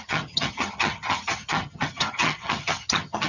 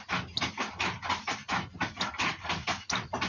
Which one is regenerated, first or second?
first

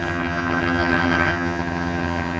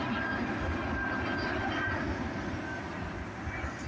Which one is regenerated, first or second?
first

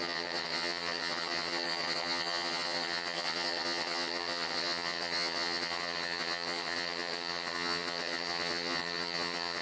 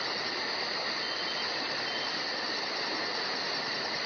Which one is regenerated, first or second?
first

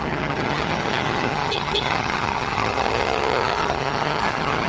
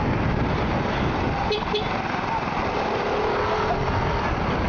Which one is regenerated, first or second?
first